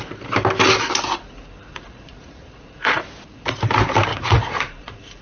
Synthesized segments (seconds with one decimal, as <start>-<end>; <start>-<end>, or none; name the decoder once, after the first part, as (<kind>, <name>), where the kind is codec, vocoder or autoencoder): 1.7-3.0 (vocoder, Vocos); 4.1-5.2